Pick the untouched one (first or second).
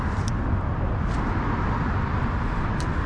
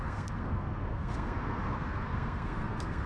first